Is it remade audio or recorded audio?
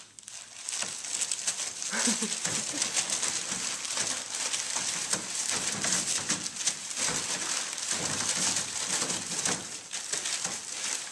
recorded